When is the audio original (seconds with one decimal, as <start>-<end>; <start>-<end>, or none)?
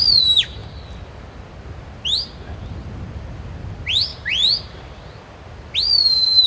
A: 0.0-6.5